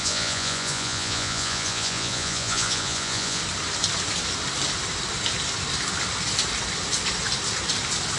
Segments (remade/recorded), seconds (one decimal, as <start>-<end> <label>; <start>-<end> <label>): 0.0-3.4 remade; 3.4-8.2 recorded